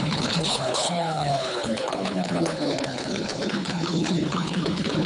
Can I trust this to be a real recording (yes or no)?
no